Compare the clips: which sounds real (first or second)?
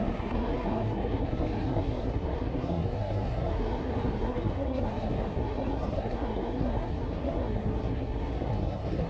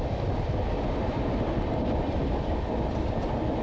second